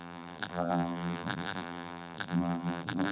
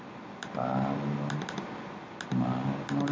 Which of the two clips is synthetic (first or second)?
first